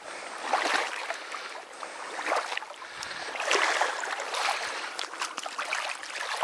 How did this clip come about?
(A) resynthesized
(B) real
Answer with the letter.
B